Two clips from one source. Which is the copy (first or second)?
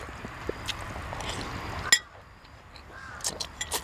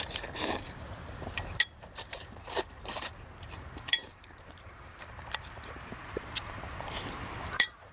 second